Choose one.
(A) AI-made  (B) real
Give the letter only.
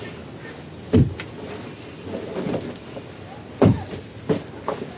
B